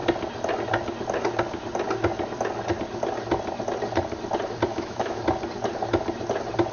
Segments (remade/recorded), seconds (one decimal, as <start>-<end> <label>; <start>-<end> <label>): 0.0-4.7 recorded; 4.7-5.2 remade; 5.2-6.7 recorded